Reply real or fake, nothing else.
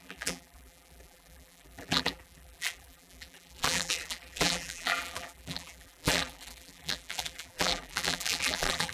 fake